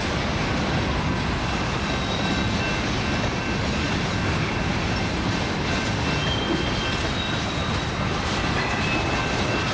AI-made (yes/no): no